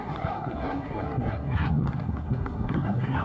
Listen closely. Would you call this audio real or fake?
fake